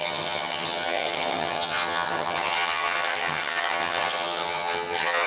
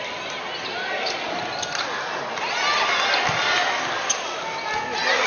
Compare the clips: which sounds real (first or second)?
second